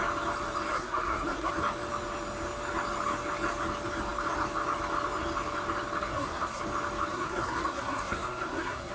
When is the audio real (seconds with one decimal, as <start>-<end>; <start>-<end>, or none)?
0.0-0.7; 1.5-6.0; 6.6-7.1